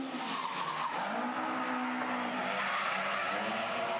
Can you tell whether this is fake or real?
real